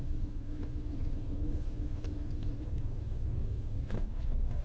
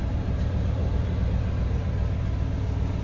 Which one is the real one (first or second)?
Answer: second